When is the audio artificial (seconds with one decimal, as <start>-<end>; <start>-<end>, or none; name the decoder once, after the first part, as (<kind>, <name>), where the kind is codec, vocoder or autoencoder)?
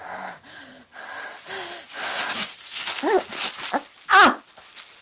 none